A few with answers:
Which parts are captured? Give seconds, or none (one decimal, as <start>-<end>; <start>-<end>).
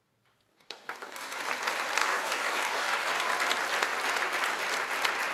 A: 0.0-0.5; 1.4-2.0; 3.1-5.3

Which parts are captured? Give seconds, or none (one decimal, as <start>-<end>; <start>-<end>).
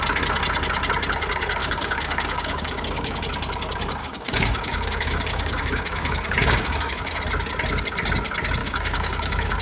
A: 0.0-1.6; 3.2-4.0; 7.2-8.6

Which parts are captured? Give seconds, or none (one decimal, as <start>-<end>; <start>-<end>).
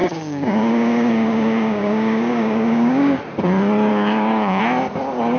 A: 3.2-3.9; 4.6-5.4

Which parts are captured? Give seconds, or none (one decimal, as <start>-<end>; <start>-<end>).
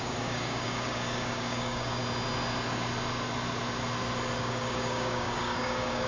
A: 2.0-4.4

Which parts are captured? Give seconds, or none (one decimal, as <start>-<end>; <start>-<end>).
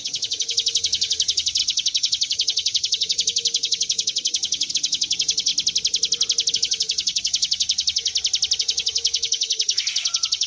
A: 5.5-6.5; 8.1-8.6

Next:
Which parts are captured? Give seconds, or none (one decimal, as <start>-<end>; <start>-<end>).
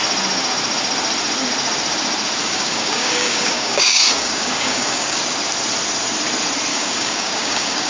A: 0.0-2.4; 5.2-6.7